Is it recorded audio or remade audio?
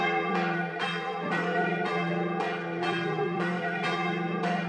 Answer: remade